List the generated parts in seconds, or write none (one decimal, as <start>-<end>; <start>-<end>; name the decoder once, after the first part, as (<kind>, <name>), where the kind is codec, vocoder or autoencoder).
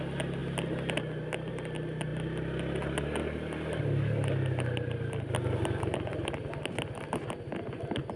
none